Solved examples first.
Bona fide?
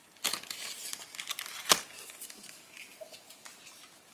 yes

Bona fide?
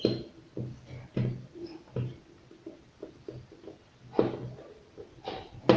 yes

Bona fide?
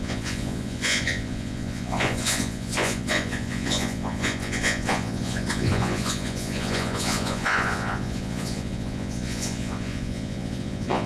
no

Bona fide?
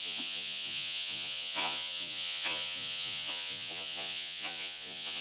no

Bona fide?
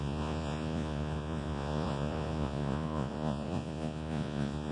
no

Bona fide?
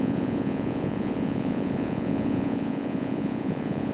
no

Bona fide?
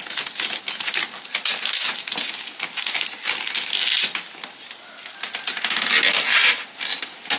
yes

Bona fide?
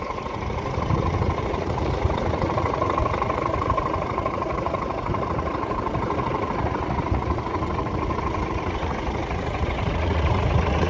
no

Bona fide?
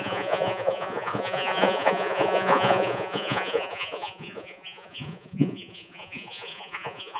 no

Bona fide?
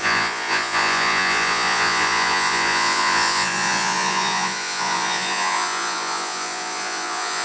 no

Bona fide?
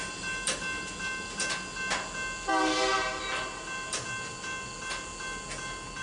yes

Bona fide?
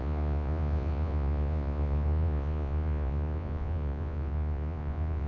no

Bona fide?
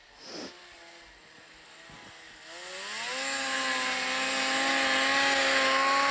yes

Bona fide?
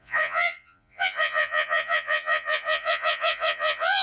no